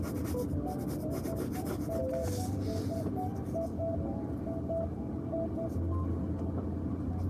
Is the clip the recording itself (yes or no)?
yes